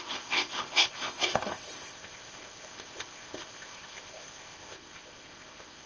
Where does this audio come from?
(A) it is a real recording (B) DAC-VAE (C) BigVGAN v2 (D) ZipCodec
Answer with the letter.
D